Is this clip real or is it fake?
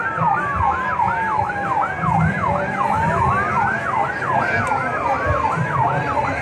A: real